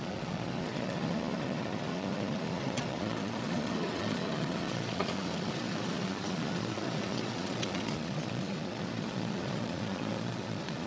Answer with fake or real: fake